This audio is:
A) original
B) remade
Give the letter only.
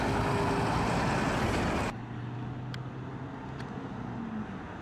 A